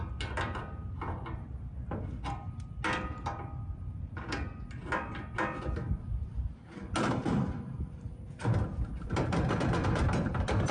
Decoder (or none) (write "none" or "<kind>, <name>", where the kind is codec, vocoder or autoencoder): none